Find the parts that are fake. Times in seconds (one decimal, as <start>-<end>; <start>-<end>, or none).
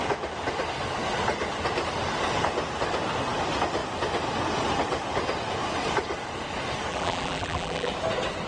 6.9-7.9